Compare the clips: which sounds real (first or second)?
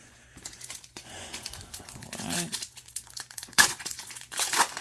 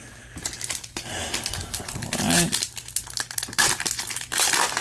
second